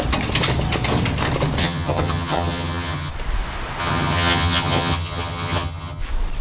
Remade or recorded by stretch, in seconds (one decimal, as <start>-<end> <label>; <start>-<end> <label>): 0.0-1.6 recorded; 1.6-3.1 remade; 3.1-3.8 recorded; 3.8-6.0 remade; 6.0-6.4 recorded